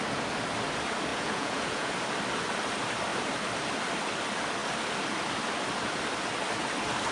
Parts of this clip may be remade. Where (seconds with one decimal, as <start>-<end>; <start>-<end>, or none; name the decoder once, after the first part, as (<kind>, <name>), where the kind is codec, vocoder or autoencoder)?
1.1-1.9 (vocoder, Vocos)